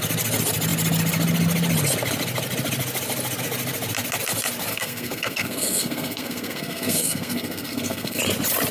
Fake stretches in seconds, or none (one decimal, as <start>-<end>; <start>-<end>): 4.7-8.2